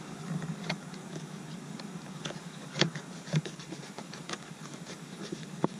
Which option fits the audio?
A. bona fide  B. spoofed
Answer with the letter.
B